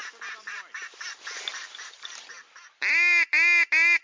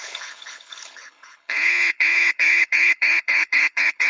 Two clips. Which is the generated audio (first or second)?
second